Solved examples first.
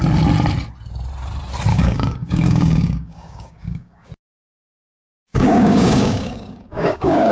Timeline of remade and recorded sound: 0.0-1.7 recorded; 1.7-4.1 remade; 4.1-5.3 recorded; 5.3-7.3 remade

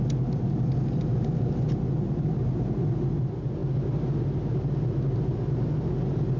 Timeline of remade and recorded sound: 0.0-6.4 recorded

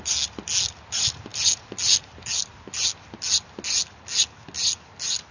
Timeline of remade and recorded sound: 0.0-5.3 recorded